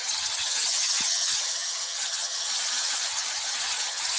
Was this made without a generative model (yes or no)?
no